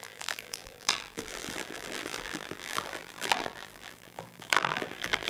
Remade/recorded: remade